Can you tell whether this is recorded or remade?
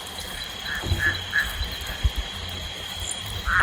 recorded